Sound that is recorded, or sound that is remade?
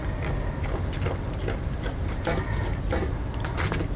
recorded